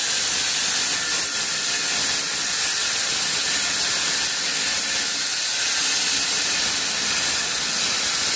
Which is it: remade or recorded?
recorded